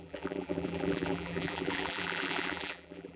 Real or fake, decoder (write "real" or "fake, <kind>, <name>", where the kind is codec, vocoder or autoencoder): fake, vocoder, BigVGAN v2